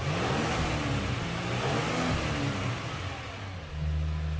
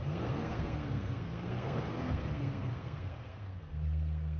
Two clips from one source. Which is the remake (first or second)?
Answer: second